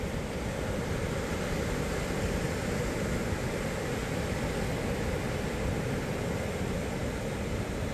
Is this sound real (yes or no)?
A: yes